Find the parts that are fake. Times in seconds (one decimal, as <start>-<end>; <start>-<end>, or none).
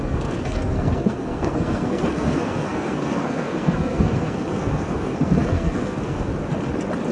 0.0-6.3